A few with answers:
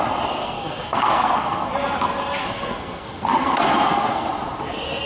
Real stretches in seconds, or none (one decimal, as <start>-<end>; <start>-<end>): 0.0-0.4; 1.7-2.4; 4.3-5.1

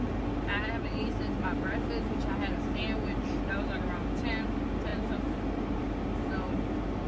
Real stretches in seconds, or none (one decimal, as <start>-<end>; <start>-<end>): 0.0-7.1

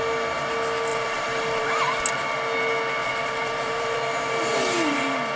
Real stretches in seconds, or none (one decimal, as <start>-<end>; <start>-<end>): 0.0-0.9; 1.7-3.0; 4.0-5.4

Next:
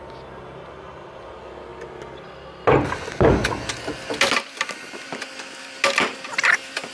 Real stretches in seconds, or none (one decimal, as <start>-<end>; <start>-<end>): 0.0-6.9